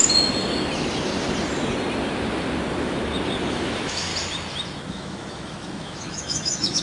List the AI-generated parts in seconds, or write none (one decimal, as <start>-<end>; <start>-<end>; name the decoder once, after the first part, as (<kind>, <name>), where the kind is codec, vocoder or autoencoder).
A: 3.5-4.1 (autoencoder, DAC-VAE); 4.9-6.8